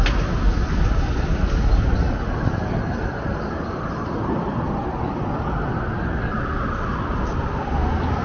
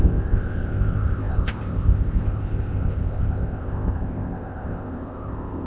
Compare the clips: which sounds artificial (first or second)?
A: second